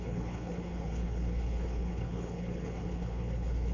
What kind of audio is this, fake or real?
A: fake